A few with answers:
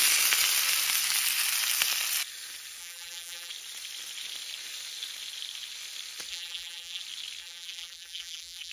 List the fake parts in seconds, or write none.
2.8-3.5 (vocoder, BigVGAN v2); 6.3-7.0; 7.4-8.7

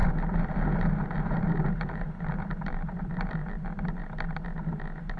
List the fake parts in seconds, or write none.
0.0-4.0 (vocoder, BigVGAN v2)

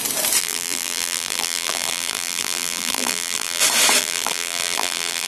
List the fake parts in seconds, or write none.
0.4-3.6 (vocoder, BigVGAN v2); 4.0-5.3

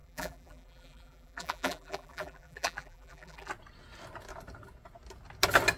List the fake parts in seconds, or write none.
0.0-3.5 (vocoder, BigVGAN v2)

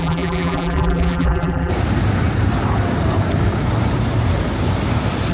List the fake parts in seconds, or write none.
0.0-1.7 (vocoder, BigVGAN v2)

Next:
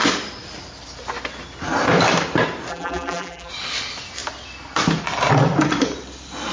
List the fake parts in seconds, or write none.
2.7-3.5 (vocoder, BigVGAN v2)

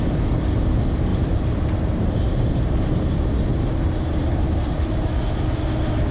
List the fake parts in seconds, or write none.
1.1-2.9 (vocoder, BigVGAN v2); 3.5-5.1